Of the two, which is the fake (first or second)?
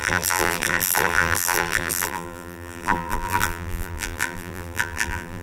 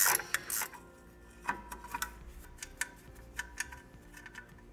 first